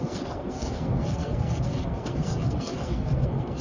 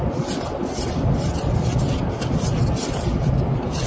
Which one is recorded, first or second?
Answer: second